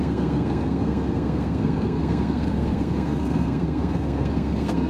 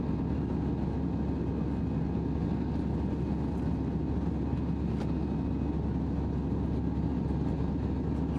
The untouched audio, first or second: second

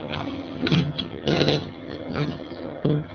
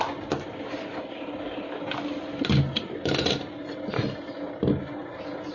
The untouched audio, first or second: second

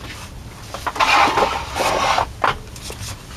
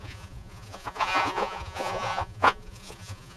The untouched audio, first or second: first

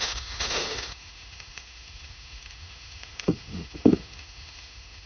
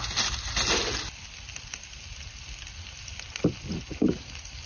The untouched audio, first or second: second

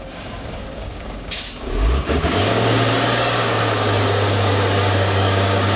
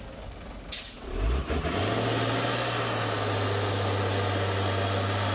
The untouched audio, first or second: second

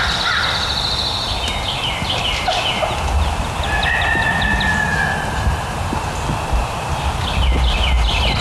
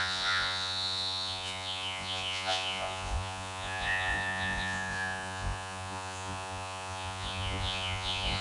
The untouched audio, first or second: first